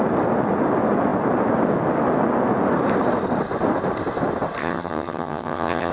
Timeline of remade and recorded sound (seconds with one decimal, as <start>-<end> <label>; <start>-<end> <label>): 0.0-4.6 recorded; 4.6-5.9 remade